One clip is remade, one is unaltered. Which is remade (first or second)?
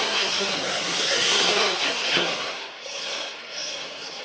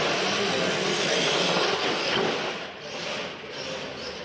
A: first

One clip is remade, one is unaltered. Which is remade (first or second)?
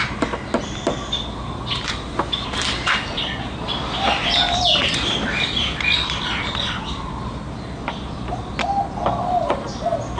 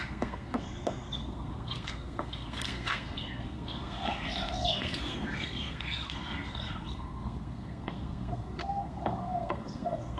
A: second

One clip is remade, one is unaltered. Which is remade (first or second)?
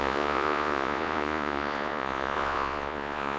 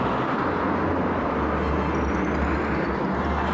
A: first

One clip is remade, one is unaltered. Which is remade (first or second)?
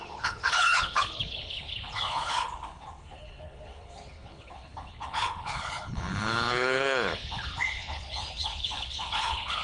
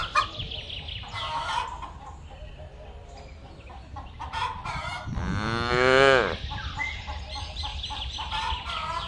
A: first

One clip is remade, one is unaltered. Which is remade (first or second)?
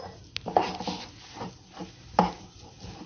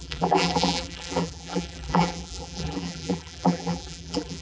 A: second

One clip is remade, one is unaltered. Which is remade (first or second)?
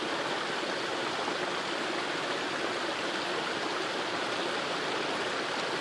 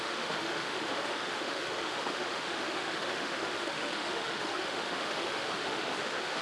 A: second